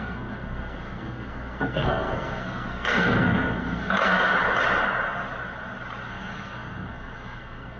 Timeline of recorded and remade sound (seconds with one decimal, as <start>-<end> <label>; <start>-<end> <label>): 0.0-4.3 remade; 4.3-6.1 recorded; 6.1-7.8 remade